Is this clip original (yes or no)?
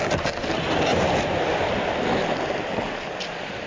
yes